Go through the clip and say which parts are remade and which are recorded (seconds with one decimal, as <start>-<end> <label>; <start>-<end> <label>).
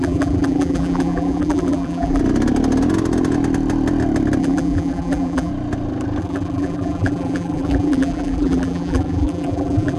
0.0-2.2 remade; 2.2-4.4 recorded; 4.4-5.5 remade; 5.5-6.2 recorded; 6.2-10.0 remade